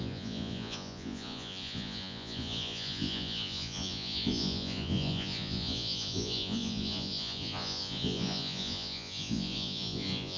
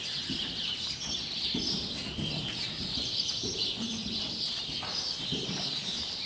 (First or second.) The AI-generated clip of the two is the first